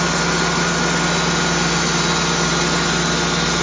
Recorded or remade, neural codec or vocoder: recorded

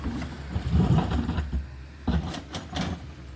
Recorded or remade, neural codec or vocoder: recorded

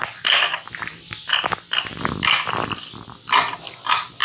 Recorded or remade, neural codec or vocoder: recorded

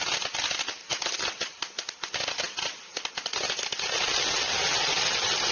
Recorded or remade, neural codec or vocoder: recorded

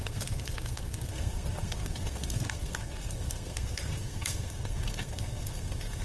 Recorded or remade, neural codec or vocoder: remade, codec, SNAC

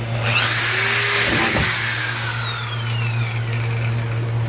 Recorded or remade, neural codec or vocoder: recorded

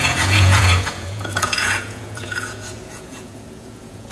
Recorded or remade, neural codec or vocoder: remade, vocoder, Vocos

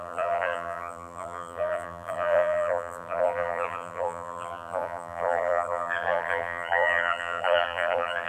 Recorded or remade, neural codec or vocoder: remade, vocoder, BigVGAN v2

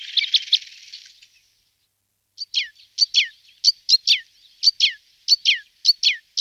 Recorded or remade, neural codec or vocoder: recorded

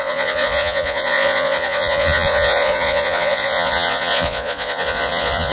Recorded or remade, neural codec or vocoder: remade, vocoder, Vocos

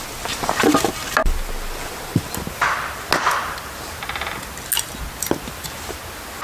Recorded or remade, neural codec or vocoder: recorded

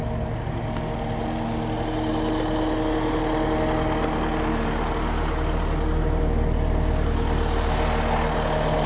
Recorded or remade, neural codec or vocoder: recorded